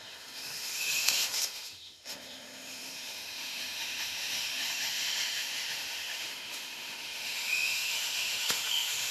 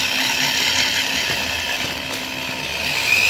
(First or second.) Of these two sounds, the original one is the second